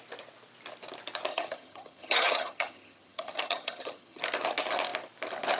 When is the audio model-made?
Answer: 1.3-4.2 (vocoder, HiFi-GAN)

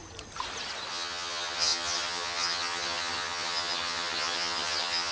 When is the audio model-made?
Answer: 0.9-5.1 (vocoder, HiFi-GAN)

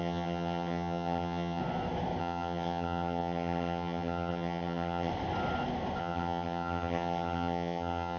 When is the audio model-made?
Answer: 0.0-1.6 (vocoder, HiFi-GAN); 2.2-5.1; 6.0-8.2

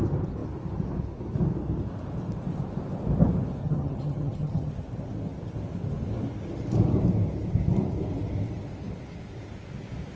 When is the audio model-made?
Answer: 3.6-4.7 (vocoder, HiFi-GAN)

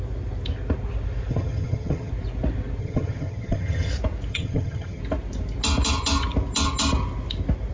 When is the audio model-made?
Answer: 1.3-2.1 (vocoder, HiFi-GAN); 2.8-3.9; 4.3-5.0

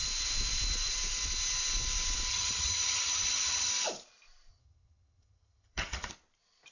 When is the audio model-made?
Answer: 2.3-3.7 (vocoder, HiFi-GAN); 4.5-6.1